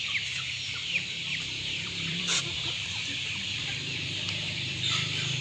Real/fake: fake